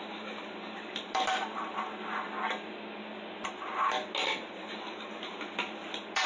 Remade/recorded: recorded